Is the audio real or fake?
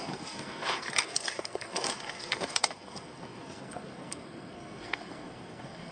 fake